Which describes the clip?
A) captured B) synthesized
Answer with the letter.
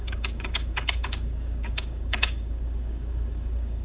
B